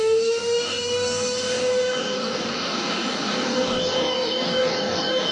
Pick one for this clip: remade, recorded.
remade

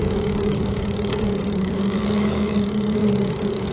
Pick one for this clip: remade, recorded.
remade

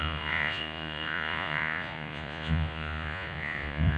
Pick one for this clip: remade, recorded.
remade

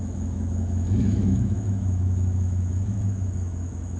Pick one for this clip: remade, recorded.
remade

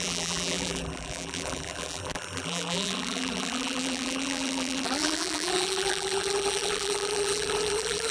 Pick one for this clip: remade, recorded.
remade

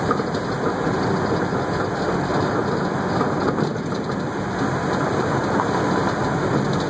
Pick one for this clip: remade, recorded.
recorded